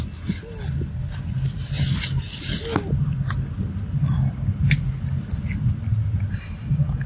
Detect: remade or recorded recorded